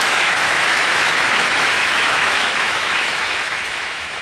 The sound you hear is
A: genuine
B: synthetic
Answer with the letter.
B